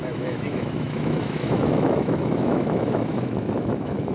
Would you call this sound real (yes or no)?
no